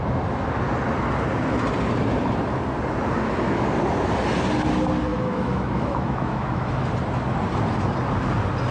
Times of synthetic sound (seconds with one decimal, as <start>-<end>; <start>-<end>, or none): 5.1-6.9